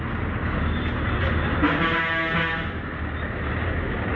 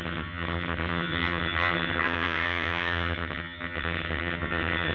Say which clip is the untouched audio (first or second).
first